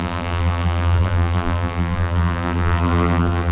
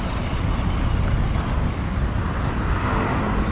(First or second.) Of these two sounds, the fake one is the first